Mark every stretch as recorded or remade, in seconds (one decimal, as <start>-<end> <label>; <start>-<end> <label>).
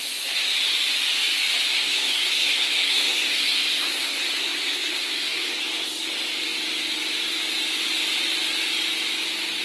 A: 0.0-1.7 recorded; 1.7-5.6 remade; 5.6-9.6 recorded